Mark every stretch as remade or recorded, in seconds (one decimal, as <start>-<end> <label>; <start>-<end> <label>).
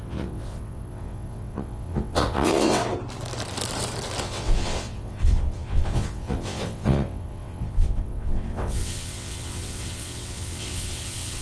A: 0.0-2.8 remade; 2.8-4.2 recorded; 4.2-11.4 remade